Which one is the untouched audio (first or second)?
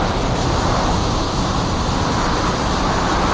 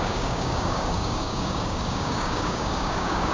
first